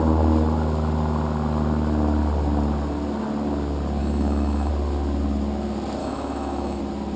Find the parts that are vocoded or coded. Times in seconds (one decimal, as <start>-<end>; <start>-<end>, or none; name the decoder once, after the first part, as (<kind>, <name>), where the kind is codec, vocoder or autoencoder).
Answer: 4.0-4.7 (autoencoder, DAC-VAE); 6.0-6.8